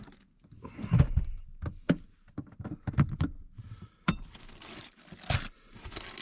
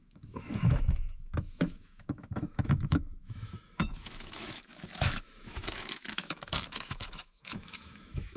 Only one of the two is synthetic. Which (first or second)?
second